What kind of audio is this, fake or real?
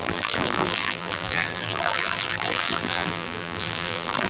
fake